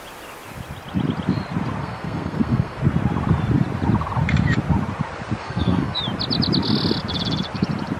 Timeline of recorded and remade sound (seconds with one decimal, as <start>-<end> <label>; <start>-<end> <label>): 0.0-1.8 recorded; 1.8-2.8 remade; 2.8-5.4 recorded; 5.4-6.0 remade; 6.0-8.0 recorded